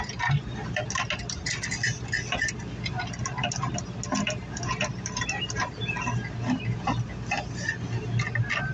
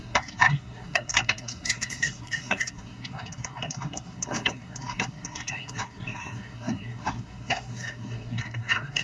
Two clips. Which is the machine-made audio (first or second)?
second